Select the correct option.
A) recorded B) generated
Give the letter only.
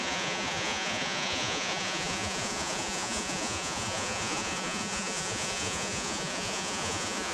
B